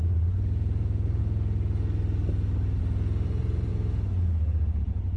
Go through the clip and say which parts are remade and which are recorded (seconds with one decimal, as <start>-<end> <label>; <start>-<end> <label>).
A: 0.0-1.2 remade; 1.2-2.8 recorded; 2.8-3.7 remade; 3.7-4.8 recorded; 4.8-5.2 remade

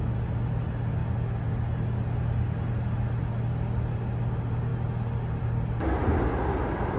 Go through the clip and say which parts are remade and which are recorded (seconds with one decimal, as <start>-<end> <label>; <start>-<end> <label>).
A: 0.0-7.0 recorded